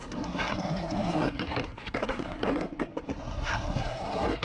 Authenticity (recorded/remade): remade